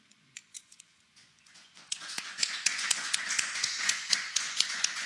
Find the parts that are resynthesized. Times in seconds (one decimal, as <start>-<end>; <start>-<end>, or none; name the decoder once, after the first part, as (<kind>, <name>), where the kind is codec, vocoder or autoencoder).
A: 0.0-5.1 (vocoder, Vocos)